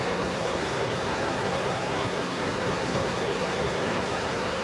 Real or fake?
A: fake